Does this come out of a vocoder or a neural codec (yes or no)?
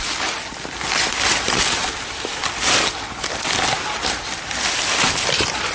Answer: no